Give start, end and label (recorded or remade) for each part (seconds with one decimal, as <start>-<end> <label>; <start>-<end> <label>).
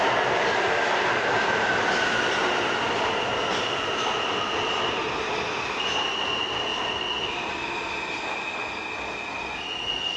0.0-10.2 recorded